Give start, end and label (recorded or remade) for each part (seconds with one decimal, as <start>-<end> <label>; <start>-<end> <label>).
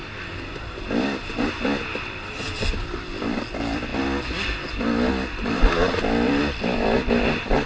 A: 0.0-7.7 recorded